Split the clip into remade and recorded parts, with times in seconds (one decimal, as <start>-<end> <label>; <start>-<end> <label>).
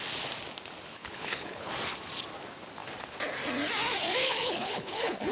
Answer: 0.0-0.9 recorded; 0.9-1.7 remade; 1.7-4.2 recorded; 4.2-5.3 remade